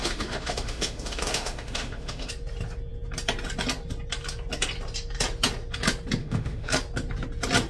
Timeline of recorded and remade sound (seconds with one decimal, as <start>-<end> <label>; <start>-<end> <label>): 0.0-2.3 remade; 2.3-6.2 recorded; 6.2-6.7 remade; 6.7-7.7 recorded